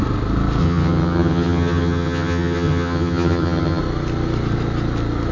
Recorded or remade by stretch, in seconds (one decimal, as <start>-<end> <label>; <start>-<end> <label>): 0.0-0.6 recorded; 0.6-3.8 remade; 3.8-5.3 recorded